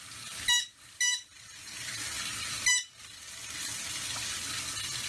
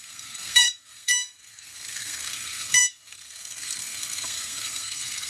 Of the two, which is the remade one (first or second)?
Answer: second